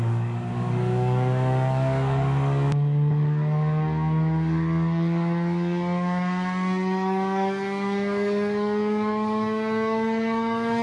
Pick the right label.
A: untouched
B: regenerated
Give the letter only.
B